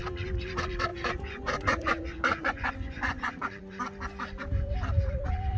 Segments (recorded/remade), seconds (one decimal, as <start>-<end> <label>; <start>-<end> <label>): 0.0-0.9 recorded; 0.9-3.8 remade; 3.8-5.6 recorded